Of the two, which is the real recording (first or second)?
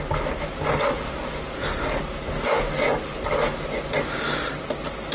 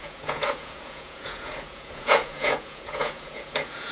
first